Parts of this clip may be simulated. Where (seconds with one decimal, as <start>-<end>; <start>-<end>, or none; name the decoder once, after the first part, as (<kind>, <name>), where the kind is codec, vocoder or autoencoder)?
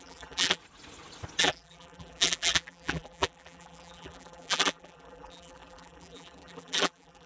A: 0.0-0.6 (vocoder, BigVGAN v2); 1.4-7.3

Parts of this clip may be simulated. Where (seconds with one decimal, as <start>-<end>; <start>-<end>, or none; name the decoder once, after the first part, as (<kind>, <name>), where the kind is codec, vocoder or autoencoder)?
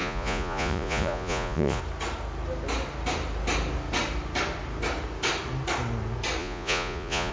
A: 0.0-1.8 (vocoder, Vocos); 6.4-7.3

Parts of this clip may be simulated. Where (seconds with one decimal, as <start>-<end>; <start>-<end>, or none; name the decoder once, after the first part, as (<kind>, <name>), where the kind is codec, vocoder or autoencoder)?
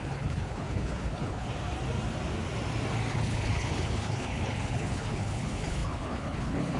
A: 0.0-1.5 (codec, HILCodec); 3.1-6.8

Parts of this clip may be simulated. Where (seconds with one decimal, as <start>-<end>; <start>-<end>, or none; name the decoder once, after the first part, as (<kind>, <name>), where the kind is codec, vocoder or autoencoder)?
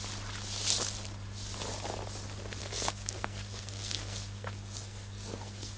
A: 2.6-5.8 (codec, SNAC)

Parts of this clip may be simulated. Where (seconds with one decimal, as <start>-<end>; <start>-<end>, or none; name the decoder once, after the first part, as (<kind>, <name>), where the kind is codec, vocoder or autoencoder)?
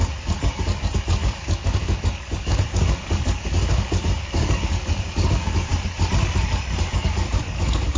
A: 0.0-5.7 (codec, DAC); 6.8-8.0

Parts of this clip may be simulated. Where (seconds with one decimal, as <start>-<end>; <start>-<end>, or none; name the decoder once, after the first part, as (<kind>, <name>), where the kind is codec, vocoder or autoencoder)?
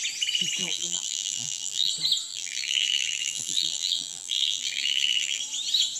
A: 0.6-1.9 (vocoder, BigVGAN v2); 2.3-5.4